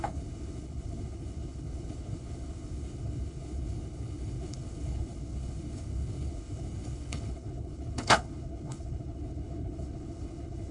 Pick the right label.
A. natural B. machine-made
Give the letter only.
B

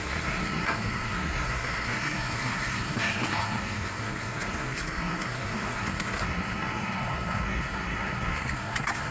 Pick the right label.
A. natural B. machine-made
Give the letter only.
B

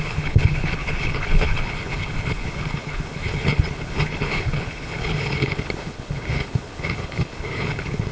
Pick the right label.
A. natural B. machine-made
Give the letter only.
B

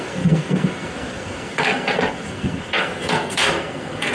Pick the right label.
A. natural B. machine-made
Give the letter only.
B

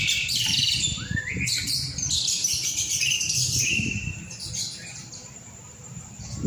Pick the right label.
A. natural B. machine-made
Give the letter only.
B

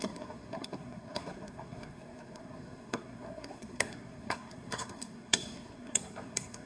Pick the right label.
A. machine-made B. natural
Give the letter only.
A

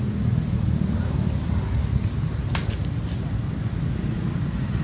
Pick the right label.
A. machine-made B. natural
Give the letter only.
B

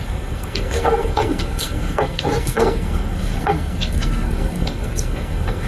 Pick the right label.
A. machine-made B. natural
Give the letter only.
A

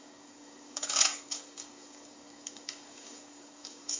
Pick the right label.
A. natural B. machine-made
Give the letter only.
B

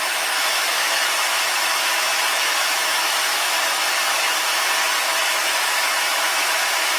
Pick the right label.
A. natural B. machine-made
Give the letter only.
B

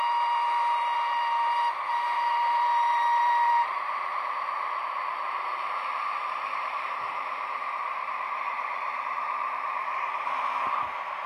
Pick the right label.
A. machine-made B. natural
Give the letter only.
A